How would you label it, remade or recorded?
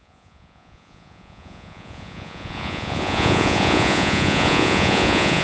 remade